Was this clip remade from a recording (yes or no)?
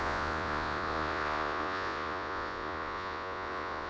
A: yes